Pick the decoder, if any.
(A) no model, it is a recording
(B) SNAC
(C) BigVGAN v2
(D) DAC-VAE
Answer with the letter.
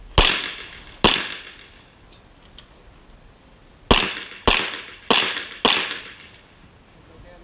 A